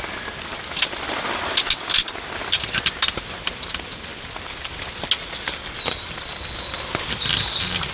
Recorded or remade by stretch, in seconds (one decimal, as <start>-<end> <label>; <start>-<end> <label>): 0.0-7.9 recorded